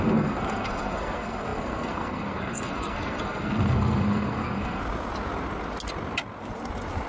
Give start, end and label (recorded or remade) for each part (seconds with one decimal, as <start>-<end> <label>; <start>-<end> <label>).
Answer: 0.0-4.8 remade; 4.8-7.1 recorded